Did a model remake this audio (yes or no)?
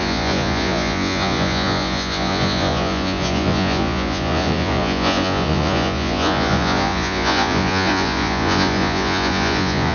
yes